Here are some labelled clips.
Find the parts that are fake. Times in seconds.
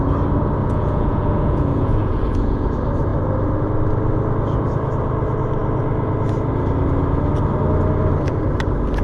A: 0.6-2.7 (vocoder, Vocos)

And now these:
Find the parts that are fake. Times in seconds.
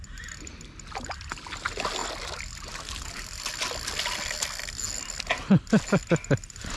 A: none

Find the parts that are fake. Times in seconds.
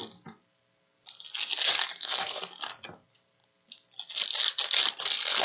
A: 1.8-2.4 (codec, SNAC)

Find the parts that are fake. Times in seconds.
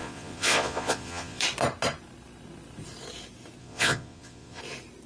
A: 0.0-1.4 (vocoder, Vocos); 3.6-4.6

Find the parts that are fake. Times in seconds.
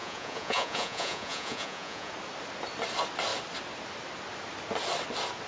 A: 0.0-2.1 (vocoder, Vocos)